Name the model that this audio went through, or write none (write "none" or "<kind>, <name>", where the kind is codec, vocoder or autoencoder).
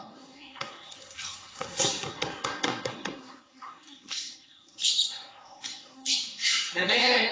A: codec, SNAC